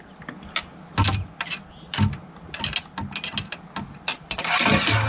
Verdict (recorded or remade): recorded